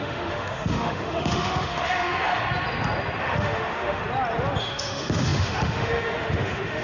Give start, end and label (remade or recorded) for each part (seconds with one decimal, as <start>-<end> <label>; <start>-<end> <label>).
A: 0.0-2.4 remade; 2.4-3.2 recorded; 3.2-4.0 remade; 4.0-4.6 recorded; 4.6-6.8 remade